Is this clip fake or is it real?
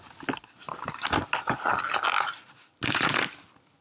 real